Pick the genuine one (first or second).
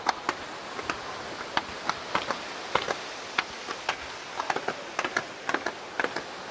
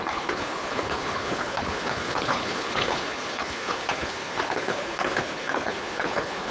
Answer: first